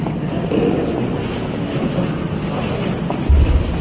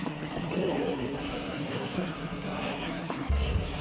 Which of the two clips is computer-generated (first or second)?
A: second